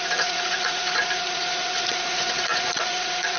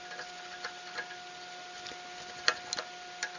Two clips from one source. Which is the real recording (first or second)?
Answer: second